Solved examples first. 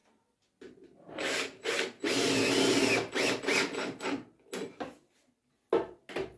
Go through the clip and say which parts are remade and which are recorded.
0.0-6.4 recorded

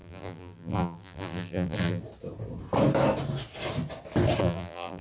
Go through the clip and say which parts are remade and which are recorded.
0.0-2.0 remade; 2.0-4.4 recorded; 4.4-5.0 remade

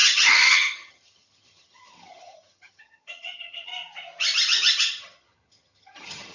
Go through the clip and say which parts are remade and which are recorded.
0.0-3.7 remade; 3.7-4.8 recorded; 4.8-6.3 remade

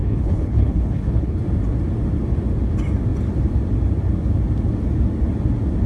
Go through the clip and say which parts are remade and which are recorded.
0.0-1.4 remade; 1.4-5.9 recorded

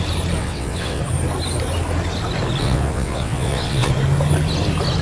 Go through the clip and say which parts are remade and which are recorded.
0.0-0.4 recorded; 0.4-1.0 remade; 1.0-2.6 recorded; 2.6-3.9 remade; 3.9-5.0 recorded

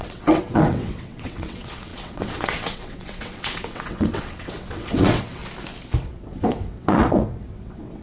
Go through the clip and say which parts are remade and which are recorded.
0.0-5.4 remade; 5.4-6.0 recorded; 6.0-8.0 remade